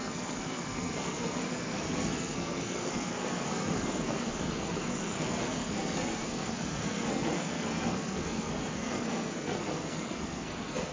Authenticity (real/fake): fake